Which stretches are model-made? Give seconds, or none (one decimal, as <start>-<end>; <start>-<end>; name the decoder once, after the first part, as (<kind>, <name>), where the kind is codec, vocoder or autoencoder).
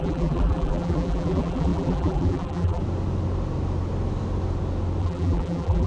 0.0-2.8 (vocoder, BigVGAN v2); 5.0-5.9